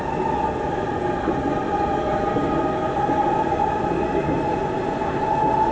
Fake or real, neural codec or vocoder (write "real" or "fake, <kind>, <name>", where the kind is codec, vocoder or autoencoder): real